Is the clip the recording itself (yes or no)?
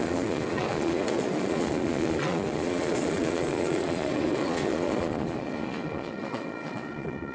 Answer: no